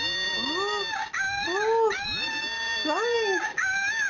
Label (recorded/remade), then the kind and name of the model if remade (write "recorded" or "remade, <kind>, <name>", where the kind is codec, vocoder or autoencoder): recorded